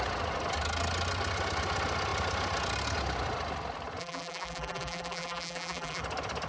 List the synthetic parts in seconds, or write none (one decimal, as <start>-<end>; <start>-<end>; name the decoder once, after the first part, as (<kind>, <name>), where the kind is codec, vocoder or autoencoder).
4.0-6.0 (vocoder, BigVGAN v2)